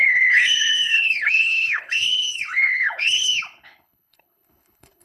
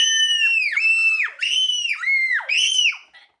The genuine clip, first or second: second